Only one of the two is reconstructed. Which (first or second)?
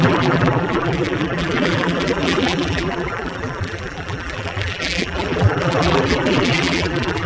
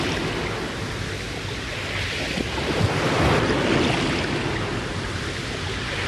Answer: first